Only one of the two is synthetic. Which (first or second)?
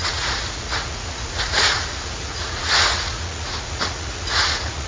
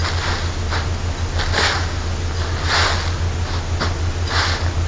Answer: first